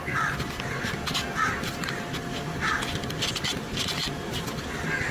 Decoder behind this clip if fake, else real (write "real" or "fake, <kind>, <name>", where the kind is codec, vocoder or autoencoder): real